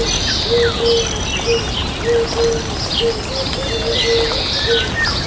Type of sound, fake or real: real